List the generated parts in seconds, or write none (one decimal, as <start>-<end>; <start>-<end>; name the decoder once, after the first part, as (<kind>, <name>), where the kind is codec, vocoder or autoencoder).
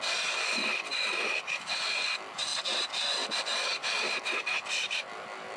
none